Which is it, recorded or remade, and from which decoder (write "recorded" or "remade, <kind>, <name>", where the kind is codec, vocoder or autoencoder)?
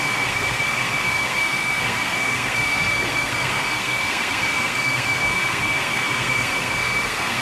remade, codec, SNAC